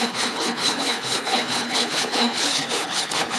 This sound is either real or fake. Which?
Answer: fake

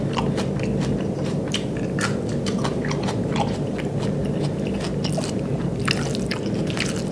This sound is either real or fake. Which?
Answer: real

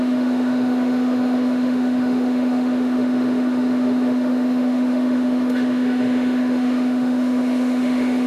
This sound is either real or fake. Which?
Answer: fake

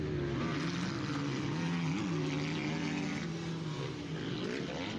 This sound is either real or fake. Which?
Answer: real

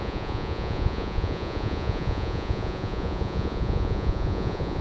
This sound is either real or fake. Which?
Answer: fake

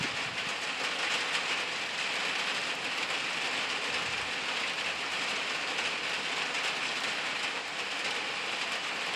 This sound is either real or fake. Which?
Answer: real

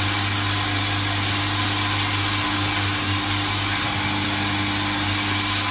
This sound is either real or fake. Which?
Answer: real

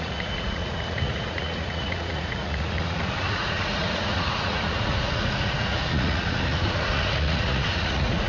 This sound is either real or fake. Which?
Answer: fake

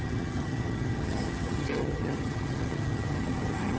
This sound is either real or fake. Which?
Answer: fake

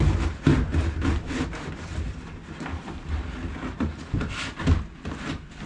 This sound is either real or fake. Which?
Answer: real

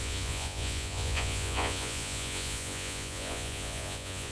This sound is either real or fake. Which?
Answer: fake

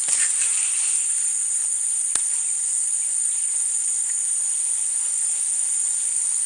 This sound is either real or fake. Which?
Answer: real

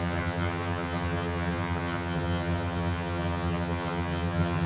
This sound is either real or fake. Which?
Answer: fake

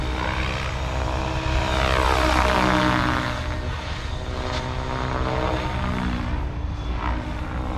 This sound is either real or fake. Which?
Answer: real